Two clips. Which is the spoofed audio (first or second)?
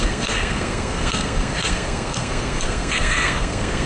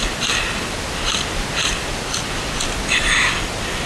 first